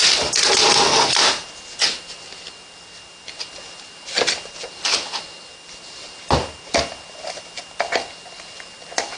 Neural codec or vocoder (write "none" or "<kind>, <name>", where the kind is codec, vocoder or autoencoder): none